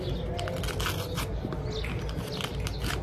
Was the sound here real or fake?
real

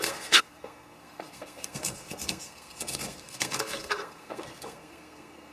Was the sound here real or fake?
fake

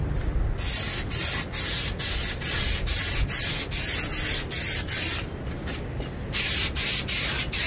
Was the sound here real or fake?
real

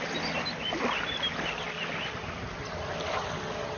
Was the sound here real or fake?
real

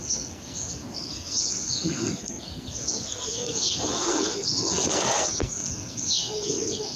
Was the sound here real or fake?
fake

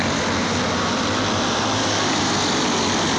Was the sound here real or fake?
real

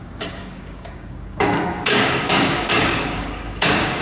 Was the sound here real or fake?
fake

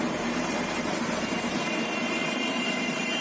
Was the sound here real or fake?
fake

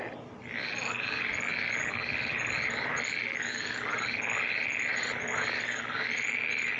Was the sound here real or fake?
fake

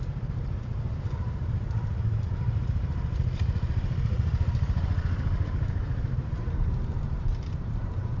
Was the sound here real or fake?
fake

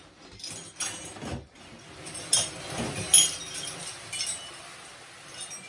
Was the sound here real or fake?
real